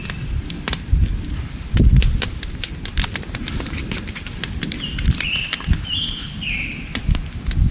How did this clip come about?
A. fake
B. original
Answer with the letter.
B